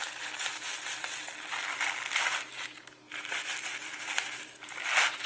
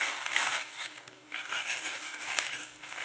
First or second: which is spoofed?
second